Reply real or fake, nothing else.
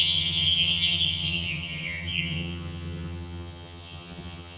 fake